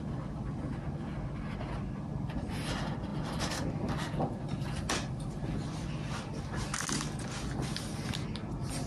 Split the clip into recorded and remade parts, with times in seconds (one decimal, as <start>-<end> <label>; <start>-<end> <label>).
0.0-3.1 recorded; 3.1-4.2 remade; 4.2-5.4 recorded; 5.4-6.3 remade; 6.3-8.9 recorded